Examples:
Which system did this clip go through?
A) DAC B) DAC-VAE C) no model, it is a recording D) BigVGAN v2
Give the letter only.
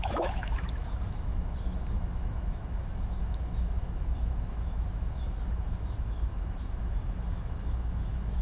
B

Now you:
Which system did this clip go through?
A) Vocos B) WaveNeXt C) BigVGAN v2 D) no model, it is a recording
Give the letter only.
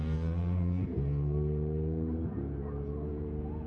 A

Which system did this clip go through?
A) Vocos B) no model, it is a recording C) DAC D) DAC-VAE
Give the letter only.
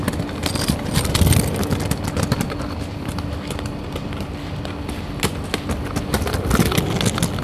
B